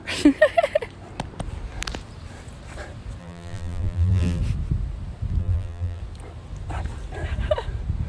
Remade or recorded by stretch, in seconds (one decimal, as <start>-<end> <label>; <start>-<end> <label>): 0.0-3.2 recorded; 3.2-4.4 remade; 4.4-5.4 recorded; 5.4-6.0 remade; 6.0-8.1 recorded